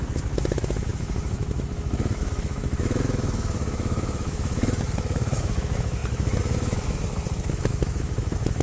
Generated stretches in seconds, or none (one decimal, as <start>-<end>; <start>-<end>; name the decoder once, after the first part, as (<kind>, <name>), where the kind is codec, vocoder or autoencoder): 0.0-8.6 (autoencoder, DAC-VAE)